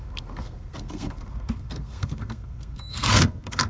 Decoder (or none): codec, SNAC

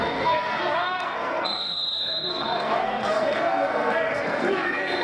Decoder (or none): codec, SNAC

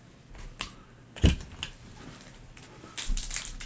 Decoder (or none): none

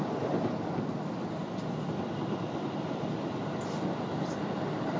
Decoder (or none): none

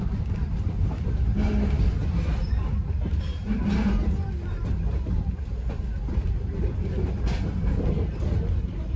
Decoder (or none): none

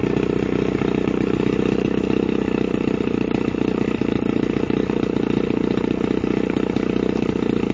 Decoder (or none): none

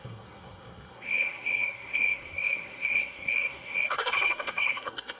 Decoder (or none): codec, SNAC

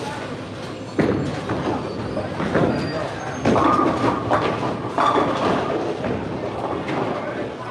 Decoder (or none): none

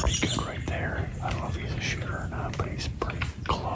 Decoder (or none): none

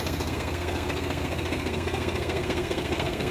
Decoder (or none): codec, SNAC